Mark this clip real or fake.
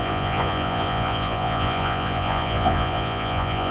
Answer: fake